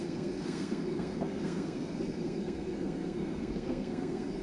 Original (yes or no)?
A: no